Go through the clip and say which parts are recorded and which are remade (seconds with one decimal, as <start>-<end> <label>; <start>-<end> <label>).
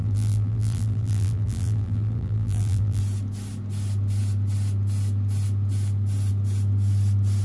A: 0.0-3.0 remade; 3.0-7.4 recorded